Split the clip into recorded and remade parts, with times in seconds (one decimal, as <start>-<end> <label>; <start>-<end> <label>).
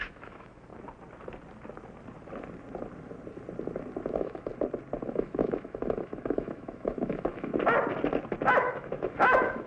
0.0-0.7 remade; 0.7-4.1 recorded; 4.1-4.5 remade; 4.5-5.1 recorded; 5.1-7.5 remade; 7.5-8.5 recorded; 8.5-9.7 remade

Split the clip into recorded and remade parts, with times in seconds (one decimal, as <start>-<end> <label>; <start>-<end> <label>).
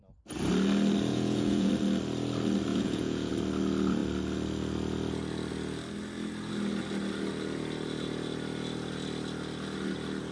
0.0-1.1 recorded; 1.1-1.7 remade; 1.7-2.7 recorded; 2.7-3.3 remade; 3.3-10.3 recorded